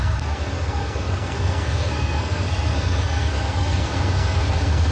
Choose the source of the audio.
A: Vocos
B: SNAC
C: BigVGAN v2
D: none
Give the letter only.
B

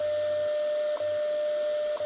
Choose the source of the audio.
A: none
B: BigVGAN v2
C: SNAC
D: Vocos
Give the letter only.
A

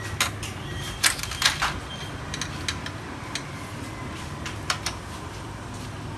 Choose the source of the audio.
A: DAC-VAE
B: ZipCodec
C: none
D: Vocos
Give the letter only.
C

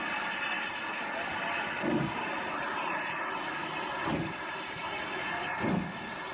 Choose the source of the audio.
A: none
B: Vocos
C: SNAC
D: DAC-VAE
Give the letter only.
A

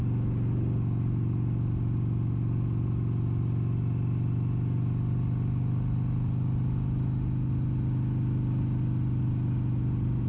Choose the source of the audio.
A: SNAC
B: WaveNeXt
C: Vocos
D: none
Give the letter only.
D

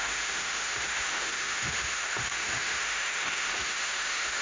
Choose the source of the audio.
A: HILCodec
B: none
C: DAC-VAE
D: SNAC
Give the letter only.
C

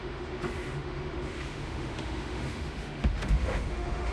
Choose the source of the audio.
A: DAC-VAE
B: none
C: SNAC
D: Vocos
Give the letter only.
A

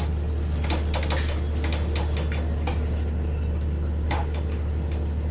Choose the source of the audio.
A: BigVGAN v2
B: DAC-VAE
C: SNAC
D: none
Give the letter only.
D